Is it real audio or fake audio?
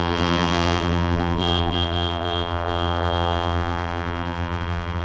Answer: fake